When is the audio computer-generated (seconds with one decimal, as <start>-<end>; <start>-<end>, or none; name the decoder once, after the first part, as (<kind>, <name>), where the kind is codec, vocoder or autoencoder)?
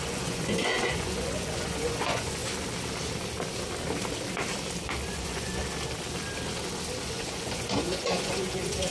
0.0-2.4 (vocoder, Vocos); 5.0-5.6; 7.0-8.9